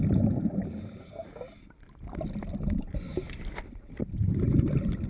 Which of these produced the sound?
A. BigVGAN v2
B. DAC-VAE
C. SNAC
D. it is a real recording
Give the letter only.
D